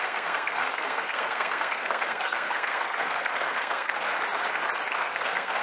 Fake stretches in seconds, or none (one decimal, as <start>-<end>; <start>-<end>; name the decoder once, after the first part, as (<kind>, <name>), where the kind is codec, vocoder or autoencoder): 0.0-4.1 (codec, SNAC); 5.0-5.6